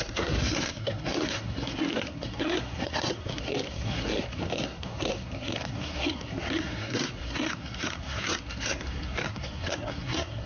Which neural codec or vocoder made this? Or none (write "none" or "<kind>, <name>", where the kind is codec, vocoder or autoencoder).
codec, SNAC